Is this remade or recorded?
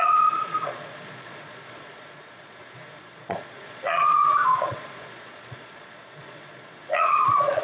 remade